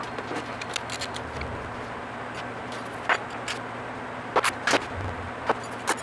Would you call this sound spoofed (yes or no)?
no